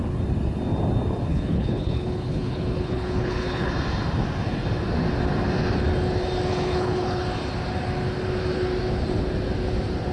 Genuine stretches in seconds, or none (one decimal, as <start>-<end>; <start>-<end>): 0.0-1.3; 3.7-6.5; 7.2-10.1